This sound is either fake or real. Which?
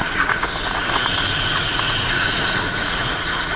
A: fake